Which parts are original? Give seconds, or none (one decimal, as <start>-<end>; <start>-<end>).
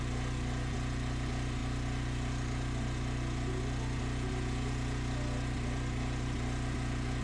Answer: 0.0-7.2